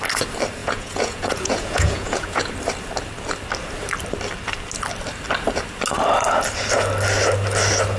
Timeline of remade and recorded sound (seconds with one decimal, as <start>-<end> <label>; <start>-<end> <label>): 0.0-0.6 recorded; 0.6-2.5 remade; 2.5-8.0 recorded